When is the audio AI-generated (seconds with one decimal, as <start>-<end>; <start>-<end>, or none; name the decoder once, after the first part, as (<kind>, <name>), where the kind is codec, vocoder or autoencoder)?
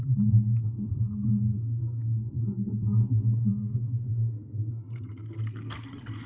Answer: 0.0-6.3 (codec, SNAC)